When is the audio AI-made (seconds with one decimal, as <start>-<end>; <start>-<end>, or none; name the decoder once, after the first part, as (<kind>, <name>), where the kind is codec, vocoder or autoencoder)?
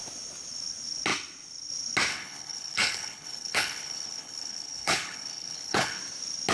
2.1-6.0 (codec, HILCodec)